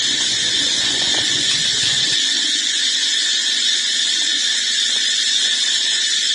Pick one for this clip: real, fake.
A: fake